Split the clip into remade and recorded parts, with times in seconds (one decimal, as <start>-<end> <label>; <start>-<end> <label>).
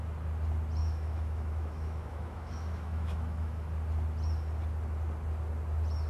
0.0-0.8 recorded; 0.8-3.7 remade; 3.7-6.1 recorded